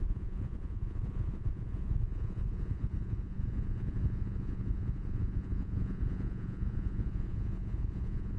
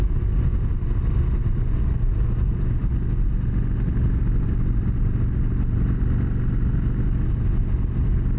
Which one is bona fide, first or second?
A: second